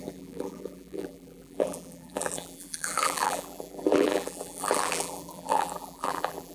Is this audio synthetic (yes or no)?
yes